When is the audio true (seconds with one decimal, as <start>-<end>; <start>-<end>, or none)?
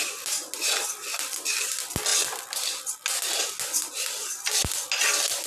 0.0-5.5